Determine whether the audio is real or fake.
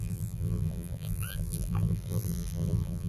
fake